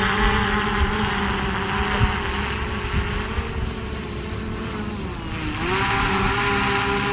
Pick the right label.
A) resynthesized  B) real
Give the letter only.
B